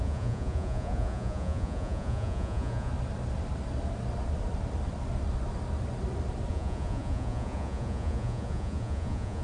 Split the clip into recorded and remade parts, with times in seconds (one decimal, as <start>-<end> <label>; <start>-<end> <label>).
0.0-2.9 remade; 2.9-6.5 recorded; 6.5-9.4 remade